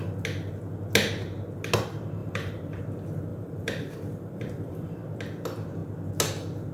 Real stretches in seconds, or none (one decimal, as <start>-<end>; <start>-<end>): 0.0-2.2; 2.8-3.3; 5.0-6.7